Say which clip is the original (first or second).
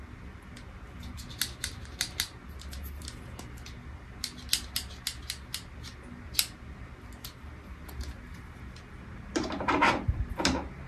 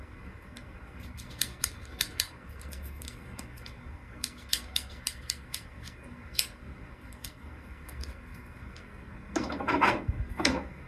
first